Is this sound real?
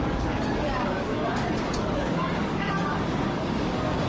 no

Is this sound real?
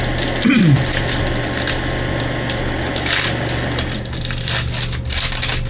yes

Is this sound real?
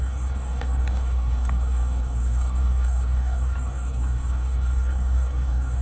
no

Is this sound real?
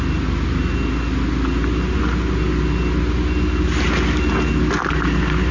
yes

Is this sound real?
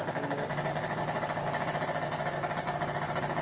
no